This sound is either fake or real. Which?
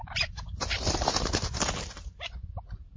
fake